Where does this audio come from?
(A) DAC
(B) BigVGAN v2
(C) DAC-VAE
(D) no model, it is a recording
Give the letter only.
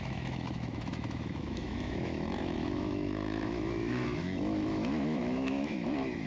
C